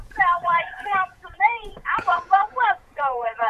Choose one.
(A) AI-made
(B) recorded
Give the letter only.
A